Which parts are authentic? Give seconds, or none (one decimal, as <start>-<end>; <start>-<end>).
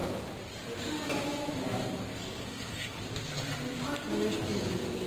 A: 0.0-2.1; 3.0-5.1